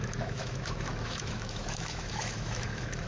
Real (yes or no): no